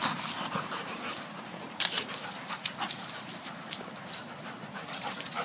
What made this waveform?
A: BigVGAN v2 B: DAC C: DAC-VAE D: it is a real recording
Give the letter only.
A